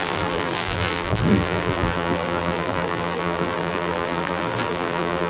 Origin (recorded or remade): remade